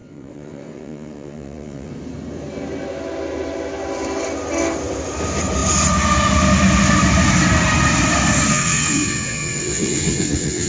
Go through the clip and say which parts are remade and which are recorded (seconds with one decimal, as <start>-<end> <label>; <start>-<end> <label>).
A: 0.0-1.9 remade; 1.9-8.5 recorded; 8.5-10.7 remade